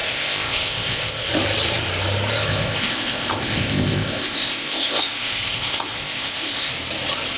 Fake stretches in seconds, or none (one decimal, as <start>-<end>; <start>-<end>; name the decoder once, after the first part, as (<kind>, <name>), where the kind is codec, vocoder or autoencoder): 0.0-1.3 (codec, ZipCodec); 2.4-6.7